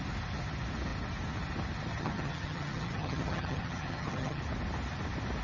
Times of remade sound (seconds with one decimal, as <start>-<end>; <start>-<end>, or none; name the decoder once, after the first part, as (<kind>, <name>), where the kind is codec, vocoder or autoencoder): 1.9-4.4 (vocoder, HiFi-GAN)